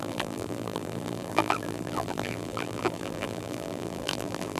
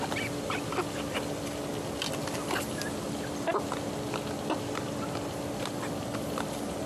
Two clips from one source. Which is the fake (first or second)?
first